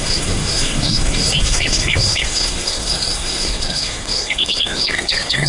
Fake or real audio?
fake